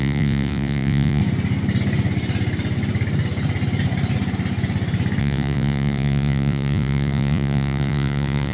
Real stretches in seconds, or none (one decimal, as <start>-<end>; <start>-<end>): 1.2-5.2